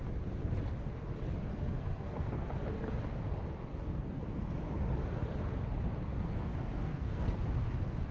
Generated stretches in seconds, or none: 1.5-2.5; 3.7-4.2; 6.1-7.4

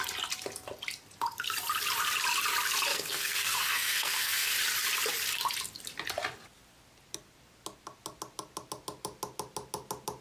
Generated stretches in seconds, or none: 2.9-4.5

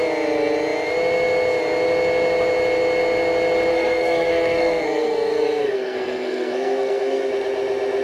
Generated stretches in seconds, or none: 3.7-7.3

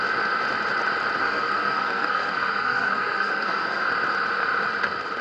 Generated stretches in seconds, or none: 1.2-3.9

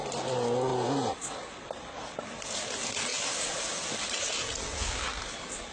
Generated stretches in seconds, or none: none

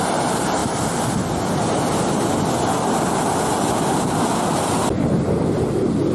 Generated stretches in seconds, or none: none

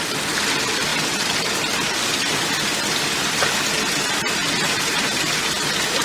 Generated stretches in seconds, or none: none

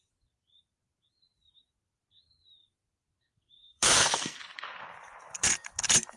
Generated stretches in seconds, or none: 3.1-4.7